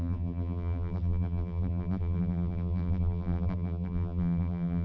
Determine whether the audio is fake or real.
fake